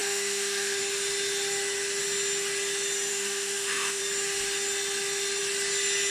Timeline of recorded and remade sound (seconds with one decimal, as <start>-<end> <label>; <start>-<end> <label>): 0.0-0.8 remade; 0.8-3.1 recorded; 3.1-4.0 remade; 4.0-6.1 recorded